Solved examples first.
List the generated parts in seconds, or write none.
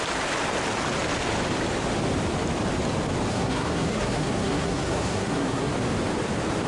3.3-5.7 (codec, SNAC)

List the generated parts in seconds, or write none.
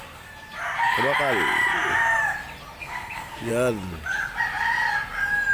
2.8-3.5 (codec, SNAC)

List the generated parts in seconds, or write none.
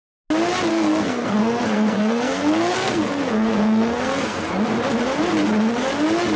0.7-4.5 (codec, SNAC)